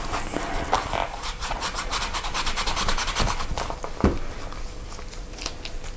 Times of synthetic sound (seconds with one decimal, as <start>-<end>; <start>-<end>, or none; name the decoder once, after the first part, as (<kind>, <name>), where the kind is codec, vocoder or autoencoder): 1.1-2.0 (vocoder, Vocos)